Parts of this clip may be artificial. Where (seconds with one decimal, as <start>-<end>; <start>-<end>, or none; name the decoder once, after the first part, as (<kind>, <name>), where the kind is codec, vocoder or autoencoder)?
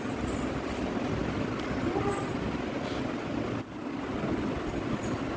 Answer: none